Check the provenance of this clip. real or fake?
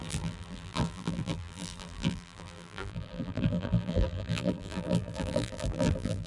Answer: fake